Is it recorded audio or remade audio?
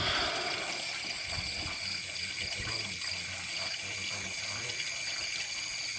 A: recorded